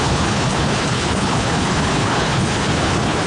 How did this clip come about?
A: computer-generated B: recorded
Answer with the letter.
A